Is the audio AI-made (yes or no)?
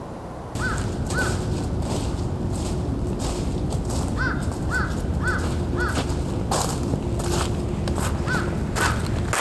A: no